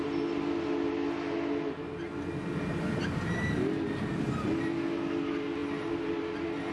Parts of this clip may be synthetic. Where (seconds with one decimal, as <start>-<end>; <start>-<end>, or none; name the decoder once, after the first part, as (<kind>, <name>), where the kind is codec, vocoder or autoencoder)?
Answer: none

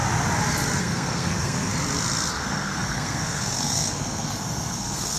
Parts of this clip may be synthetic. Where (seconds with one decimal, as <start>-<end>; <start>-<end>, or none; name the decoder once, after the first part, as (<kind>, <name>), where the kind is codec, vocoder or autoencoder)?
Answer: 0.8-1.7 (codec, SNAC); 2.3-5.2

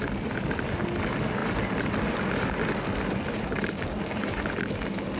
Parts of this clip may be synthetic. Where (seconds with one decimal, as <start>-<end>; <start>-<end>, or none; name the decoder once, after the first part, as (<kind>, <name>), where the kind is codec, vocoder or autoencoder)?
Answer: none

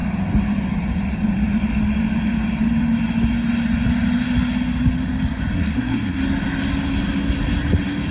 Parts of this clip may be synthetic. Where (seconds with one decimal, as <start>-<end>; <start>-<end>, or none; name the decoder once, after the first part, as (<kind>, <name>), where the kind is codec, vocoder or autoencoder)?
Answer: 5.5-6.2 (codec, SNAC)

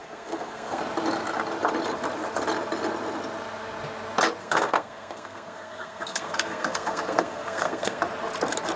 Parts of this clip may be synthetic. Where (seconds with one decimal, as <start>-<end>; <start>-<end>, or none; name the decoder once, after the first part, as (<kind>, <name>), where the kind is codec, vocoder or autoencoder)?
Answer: 0.0-0.8 (codec, SNAC); 4.4-8.0